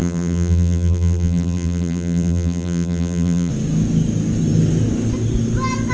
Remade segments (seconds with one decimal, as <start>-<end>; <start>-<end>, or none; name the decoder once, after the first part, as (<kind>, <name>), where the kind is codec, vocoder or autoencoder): 0.0-3.5 (vocoder, BigVGAN v2)